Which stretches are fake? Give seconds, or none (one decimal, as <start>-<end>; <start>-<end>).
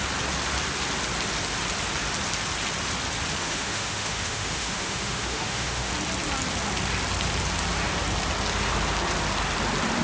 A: 3.4-5.9